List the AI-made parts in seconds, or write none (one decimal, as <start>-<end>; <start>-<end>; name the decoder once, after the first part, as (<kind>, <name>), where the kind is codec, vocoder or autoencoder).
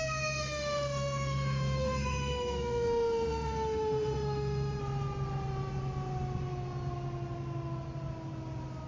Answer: 0.0-4.8 (autoencoder, DAC-VAE)